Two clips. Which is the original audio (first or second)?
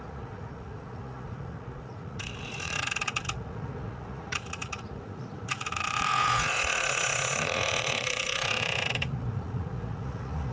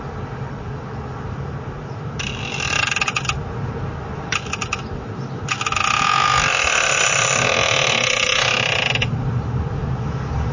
second